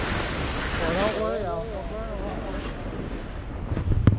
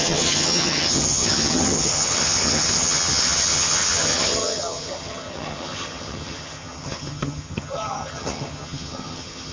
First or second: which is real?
first